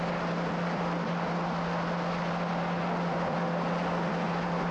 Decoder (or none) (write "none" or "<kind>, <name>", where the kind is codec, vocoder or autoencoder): none